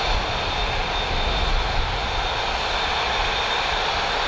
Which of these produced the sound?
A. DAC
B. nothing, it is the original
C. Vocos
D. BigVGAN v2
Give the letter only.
B